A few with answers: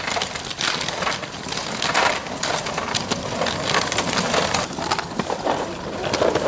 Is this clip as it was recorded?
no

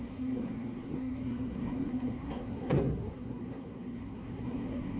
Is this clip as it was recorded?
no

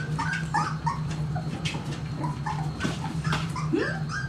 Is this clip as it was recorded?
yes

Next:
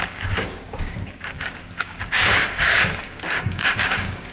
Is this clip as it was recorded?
no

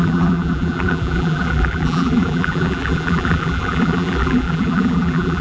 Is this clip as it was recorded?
no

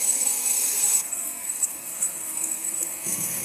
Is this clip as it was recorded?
no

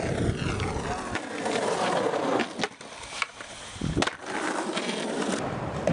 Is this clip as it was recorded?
yes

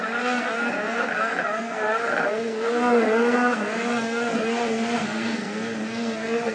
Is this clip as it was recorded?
no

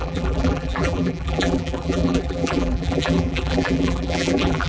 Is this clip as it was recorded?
no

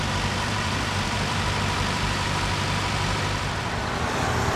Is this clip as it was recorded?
no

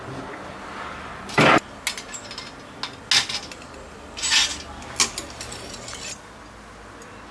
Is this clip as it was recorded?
yes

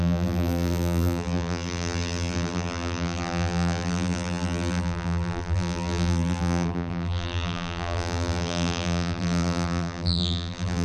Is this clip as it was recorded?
no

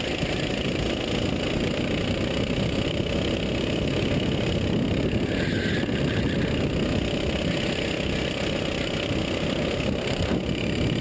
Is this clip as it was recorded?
yes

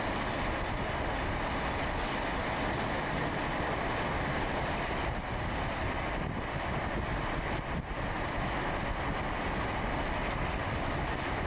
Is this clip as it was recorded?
yes